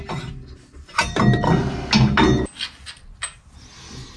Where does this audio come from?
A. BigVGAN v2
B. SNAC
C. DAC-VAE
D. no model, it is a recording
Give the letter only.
D